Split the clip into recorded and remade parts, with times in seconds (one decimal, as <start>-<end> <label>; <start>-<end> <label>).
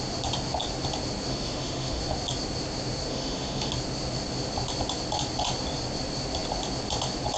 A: 0.0-1.3 recorded; 1.3-2.0 remade; 2.0-3.1 recorded; 3.1-3.7 remade; 3.7-7.4 recorded